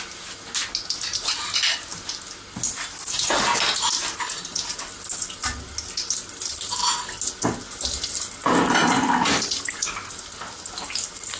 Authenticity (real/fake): real